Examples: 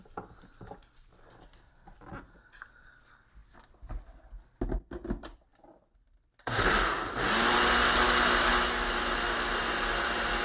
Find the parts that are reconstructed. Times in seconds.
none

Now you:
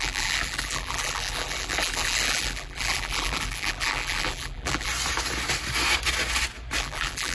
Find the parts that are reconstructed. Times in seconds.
0.0-4.9 (vocoder, BigVGAN v2); 6.8-7.3

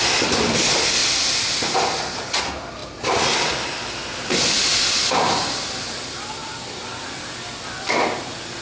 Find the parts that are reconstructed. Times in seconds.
1.0-2.0 (vocoder, BigVGAN v2)

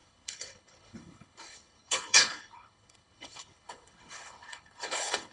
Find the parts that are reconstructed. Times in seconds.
0.0-5.3 (codec, HILCodec)

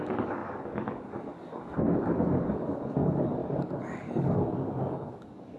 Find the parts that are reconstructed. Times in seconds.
0.0-5.6 (codec, DAC)

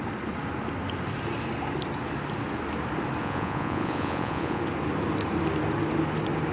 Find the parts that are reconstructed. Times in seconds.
3.2-4.6 (vocoder, Vocos)

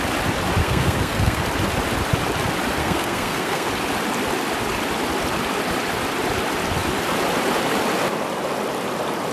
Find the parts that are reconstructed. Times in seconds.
0.6-1.4 (codec, SNAC); 2.8-3.7